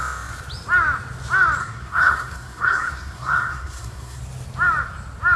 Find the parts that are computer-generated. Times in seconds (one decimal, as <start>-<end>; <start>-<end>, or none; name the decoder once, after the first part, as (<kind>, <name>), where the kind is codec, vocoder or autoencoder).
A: 1.6-4.2 (codec, SNAC)